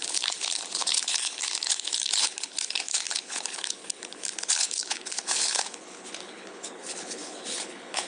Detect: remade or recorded remade